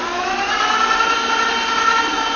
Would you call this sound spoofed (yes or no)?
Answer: yes